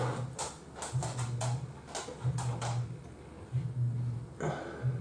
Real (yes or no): yes